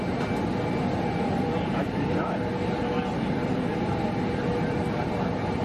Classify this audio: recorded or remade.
recorded